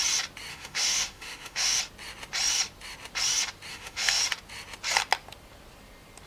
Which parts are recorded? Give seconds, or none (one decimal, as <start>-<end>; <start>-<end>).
0.0-0.5; 1.8-3.7; 4.2-6.3